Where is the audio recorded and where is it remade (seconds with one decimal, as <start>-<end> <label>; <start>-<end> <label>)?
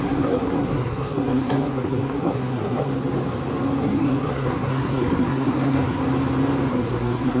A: 0.0-2.9 remade; 2.9-3.8 recorded; 3.8-6.0 remade; 6.0-6.7 recorded; 6.7-7.4 remade